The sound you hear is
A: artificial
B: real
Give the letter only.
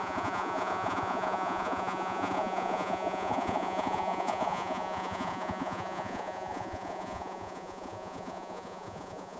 A